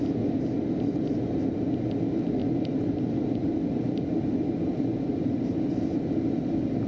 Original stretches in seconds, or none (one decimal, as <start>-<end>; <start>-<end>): 0.0-2.4; 3.1-6.9